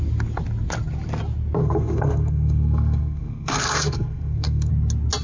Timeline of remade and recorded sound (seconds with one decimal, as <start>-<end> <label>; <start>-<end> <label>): 0.0-1.6 recorded; 1.6-4.7 remade; 4.7-5.2 recorded

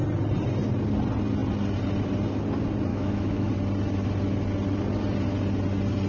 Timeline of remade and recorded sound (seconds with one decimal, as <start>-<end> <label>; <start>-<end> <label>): 0.0-2.9 recorded; 2.9-3.5 remade; 3.5-6.1 recorded

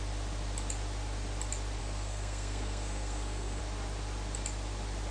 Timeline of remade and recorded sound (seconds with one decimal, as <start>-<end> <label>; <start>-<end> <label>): 0.0-1.8 recorded; 1.8-3.6 remade; 3.6-5.1 recorded

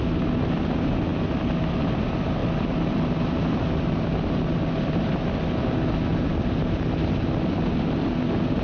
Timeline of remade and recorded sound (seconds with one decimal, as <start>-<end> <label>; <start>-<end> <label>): 0.0-8.6 recorded

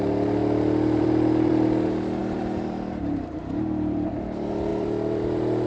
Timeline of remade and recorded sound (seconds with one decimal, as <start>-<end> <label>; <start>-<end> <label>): 0.0-5.7 remade